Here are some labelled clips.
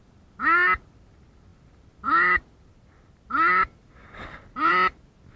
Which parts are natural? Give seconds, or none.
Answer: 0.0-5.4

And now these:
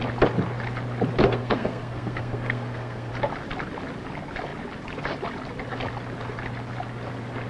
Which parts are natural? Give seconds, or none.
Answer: 0.0-1.2; 3.1-7.5

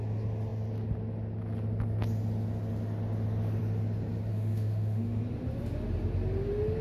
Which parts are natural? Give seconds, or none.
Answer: 0.0-4.3; 5.2-6.8

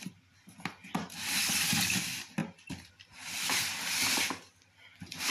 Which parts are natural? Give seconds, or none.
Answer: 0.0-5.3

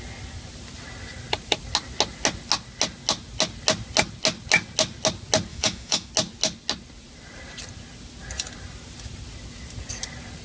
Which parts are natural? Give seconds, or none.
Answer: 0.0-5.5; 6.1-10.4

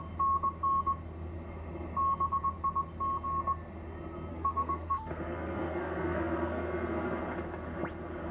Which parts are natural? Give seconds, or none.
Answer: 0.0-4.3; 7.2-8.3